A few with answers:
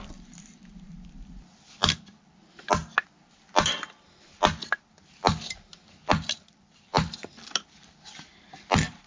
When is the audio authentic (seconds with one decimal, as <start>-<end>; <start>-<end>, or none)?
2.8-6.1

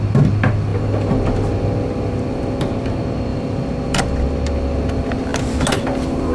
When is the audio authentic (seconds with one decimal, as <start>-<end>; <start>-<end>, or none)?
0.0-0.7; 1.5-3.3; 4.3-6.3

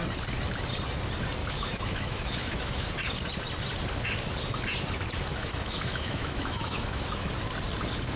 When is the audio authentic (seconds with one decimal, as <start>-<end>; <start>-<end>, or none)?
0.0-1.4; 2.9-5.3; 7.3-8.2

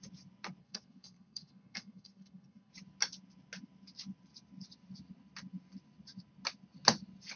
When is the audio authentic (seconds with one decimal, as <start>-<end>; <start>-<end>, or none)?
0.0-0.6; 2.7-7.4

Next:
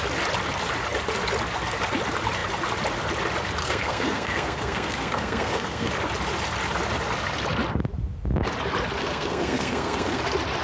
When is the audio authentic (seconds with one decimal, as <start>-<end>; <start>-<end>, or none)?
0.0-3.6; 5.9-9.0; 10.2-10.6

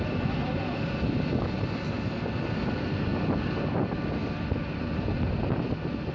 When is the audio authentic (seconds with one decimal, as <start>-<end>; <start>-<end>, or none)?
0.0-6.1

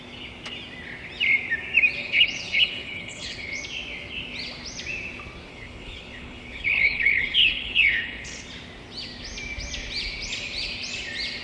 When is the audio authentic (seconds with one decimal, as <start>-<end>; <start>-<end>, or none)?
0.0-2.0; 3.6-5.5; 8.5-11.4

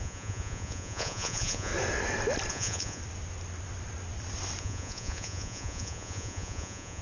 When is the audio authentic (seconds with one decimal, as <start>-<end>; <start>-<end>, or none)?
1.7-2.5; 3.0-4.6